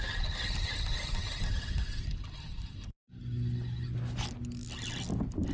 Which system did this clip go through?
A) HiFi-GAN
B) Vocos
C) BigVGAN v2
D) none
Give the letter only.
D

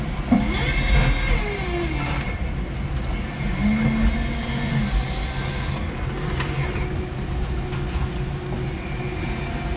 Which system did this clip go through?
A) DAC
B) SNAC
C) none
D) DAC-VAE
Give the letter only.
C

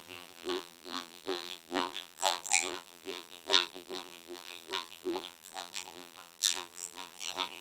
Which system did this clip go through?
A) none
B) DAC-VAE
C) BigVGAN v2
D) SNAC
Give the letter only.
C